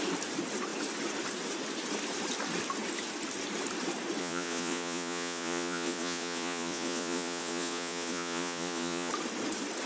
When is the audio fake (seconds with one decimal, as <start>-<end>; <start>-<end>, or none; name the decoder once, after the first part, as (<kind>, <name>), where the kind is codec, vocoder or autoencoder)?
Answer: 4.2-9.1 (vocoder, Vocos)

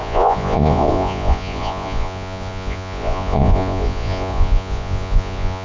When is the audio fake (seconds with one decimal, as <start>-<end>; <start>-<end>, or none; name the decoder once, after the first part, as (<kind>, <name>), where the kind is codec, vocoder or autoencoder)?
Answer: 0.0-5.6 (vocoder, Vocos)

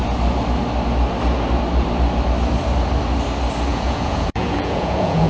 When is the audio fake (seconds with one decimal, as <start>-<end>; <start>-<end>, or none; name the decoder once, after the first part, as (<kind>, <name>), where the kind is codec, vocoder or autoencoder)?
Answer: 3.7-5.3 (vocoder, Vocos)

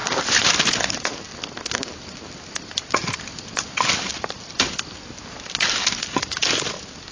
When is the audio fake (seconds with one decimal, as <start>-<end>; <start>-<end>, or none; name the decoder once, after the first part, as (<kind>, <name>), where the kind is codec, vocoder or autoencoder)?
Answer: none

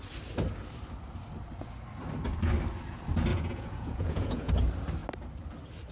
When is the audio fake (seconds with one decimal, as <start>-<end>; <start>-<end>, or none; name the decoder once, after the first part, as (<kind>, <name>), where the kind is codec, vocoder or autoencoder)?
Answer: 3.3-4.5 (vocoder, Vocos)